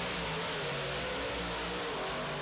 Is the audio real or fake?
real